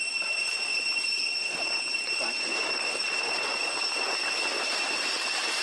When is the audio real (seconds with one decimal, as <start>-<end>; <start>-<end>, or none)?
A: 0.0-0.7; 4.1-5.6